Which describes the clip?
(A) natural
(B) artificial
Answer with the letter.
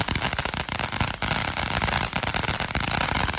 A